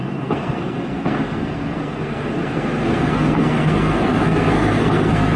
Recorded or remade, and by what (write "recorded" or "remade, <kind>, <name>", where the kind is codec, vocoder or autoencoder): remade, codec, SNAC